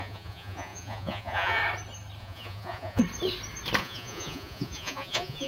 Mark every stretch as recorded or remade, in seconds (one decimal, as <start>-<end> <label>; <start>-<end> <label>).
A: 0.0-1.6 remade; 1.6-2.2 recorded; 2.2-3.0 remade; 3.0-3.8 recorded; 3.8-5.5 remade